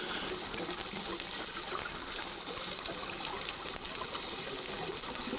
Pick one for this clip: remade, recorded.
recorded